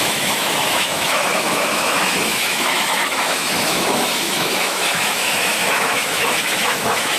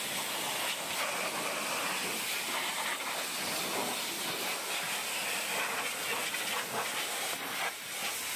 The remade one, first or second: first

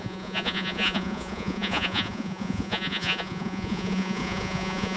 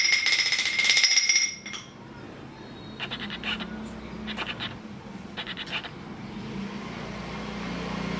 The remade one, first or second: first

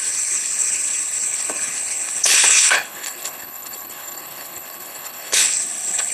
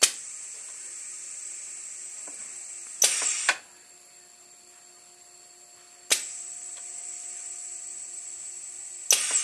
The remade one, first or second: first